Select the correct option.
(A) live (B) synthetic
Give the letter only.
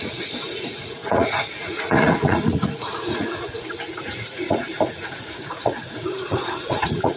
B